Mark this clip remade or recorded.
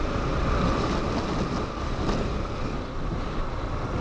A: recorded